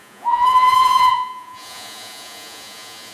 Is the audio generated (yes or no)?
yes